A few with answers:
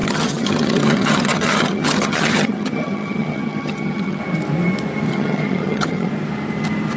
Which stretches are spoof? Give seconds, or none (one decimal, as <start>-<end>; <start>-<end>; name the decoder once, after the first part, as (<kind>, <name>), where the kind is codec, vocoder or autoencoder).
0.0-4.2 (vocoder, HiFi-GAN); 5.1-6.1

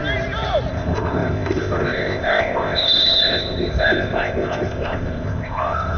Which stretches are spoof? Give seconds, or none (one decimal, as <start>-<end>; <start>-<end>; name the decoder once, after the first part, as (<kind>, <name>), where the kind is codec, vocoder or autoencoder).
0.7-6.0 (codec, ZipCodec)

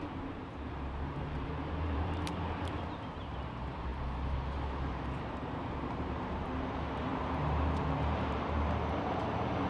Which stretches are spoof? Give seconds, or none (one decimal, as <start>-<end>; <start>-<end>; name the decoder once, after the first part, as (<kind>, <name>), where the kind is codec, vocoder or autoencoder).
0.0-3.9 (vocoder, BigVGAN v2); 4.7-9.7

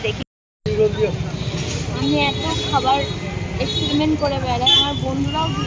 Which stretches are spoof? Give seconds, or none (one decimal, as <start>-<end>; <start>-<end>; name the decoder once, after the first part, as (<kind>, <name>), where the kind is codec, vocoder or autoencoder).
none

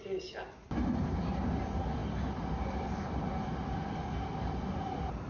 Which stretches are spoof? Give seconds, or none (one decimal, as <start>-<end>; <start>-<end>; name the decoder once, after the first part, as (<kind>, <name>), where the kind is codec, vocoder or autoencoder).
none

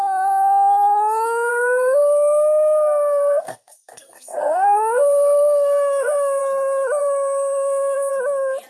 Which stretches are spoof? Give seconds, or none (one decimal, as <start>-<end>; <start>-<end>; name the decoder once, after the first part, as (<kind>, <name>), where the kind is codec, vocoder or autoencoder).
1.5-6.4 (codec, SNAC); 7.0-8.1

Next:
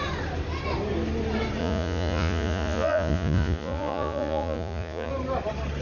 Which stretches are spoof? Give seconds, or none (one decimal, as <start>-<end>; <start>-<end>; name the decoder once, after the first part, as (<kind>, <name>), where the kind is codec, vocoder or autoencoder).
1.6-5.1 (vocoder, Vocos)